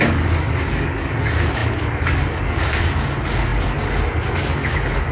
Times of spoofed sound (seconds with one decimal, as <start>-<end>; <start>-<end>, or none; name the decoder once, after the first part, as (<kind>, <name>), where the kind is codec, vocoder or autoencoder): 0.0-5.1 (codec, DAC)